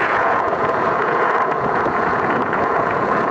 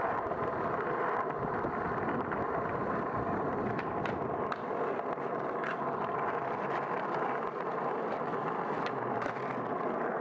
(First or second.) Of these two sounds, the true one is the second